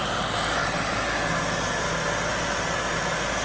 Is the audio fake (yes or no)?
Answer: no